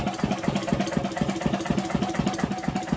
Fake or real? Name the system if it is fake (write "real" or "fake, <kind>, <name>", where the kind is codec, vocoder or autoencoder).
real